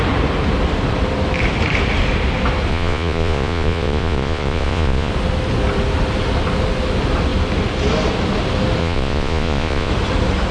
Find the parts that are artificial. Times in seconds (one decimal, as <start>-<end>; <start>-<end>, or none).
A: 2.7-5.1; 8.8-9.9